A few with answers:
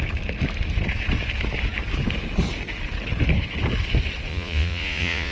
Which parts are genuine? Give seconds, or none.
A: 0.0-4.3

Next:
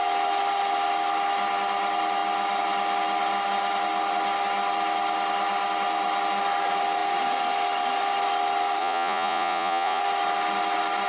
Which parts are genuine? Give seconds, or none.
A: 0.0-8.8; 10.0-11.1

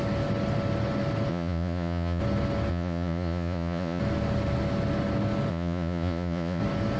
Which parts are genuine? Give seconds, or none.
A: 0.0-1.3; 2.2-2.7; 4.0-5.5; 6.6-7.0